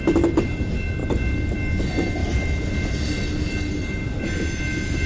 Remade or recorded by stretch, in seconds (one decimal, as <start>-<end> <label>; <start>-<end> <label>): 0.0-5.1 recorded